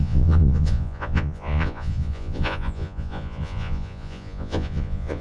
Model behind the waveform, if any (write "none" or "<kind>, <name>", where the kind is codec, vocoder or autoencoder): vocoder, Vocos